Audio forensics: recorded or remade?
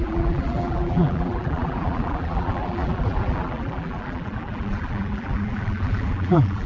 remade